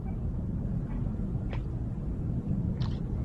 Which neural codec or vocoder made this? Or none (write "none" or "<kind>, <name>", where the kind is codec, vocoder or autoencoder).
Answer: none